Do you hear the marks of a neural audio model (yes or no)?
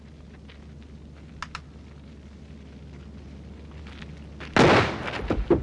no